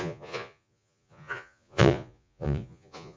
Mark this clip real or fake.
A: fake